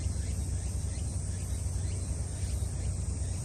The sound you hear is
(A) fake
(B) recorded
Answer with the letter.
B